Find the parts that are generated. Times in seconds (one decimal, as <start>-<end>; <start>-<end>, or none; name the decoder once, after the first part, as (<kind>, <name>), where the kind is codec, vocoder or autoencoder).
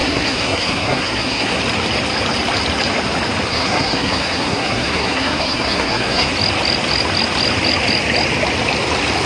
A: 0.0-1.6 (codec, SNAC); 3.5-6.3